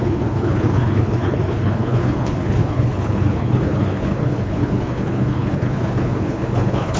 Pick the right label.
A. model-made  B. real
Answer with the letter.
A